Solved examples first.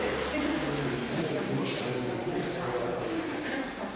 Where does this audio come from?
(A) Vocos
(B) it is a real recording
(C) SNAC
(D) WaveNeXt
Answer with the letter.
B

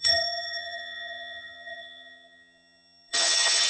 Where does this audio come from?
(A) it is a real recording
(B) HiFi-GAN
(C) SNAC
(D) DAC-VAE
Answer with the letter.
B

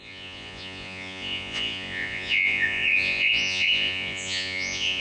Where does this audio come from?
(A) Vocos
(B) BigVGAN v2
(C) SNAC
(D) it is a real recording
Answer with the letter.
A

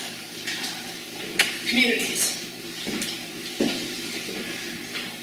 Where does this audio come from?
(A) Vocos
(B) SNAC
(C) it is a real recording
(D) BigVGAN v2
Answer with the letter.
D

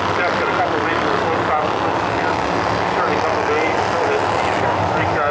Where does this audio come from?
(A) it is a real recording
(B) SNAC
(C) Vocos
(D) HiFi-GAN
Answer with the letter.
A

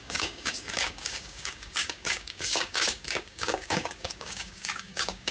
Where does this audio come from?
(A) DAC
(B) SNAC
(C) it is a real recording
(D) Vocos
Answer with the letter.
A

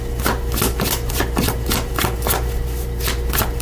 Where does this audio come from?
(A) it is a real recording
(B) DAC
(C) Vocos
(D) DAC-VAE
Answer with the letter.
A